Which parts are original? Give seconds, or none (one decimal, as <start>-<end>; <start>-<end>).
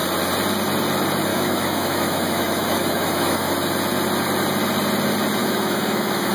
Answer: 0.0-1.3; 3.5-5.4